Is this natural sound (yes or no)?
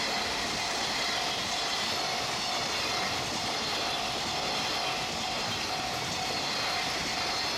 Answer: yes